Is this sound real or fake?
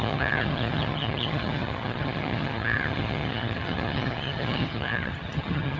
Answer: fake